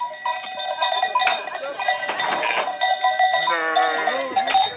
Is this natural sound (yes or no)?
yes